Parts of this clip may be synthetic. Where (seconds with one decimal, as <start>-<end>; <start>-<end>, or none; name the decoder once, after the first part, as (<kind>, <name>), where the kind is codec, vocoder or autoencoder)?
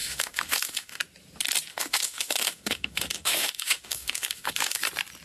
0.0-1.0 (autoencoder, DAC-VAE); 1.7-4.8